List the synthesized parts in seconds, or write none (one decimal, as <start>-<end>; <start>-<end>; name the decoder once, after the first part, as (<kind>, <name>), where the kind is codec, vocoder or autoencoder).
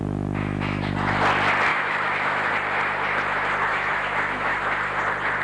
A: 0.4-0.9 (autoencoder, DAC-VAE); 1.7-2.5; 3.7-4.6